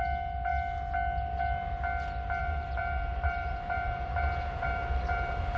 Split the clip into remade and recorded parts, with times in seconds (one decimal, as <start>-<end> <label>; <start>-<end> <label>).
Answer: 0.0-2.4 recorded; 2.4-5.6 remade